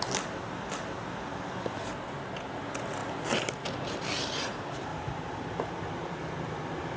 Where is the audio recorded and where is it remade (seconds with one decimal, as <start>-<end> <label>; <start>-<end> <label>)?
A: 0.0-3.0 recorded; 3.0-4.3 remade; 4.3-4.9 recorded; 4.9-5.8 remade; 5.8-7.0 recorded